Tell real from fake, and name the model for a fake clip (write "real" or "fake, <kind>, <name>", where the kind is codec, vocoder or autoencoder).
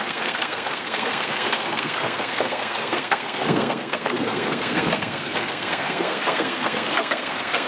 fake, codec, SNAC